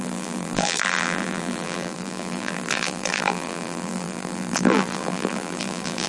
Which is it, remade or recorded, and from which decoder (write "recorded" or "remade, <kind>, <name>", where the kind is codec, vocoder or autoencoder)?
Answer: remade, vocoder, BigVGAN v2